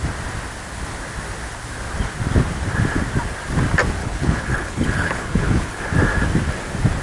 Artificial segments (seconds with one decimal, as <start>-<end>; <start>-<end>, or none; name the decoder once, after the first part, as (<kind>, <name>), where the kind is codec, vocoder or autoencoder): 4.0-5.8 (codec, HILCodec)